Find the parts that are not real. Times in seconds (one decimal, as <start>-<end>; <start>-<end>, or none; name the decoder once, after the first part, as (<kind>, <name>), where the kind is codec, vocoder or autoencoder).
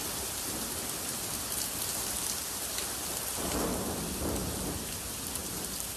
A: 5.4-6.0 (vocoder, BigVGAN v2)